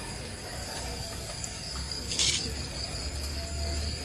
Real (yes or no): no